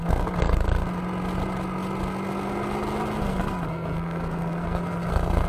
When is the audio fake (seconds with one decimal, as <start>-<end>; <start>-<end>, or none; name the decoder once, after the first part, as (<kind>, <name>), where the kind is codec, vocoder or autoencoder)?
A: 0.0-0.6 (codec, SNAC); 3.2-5.5